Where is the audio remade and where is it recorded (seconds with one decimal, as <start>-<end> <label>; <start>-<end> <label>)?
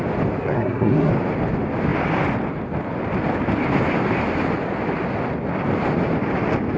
0.0-0.4 recorded; 0.4-1.1 remade; 1.1-6.8 recorded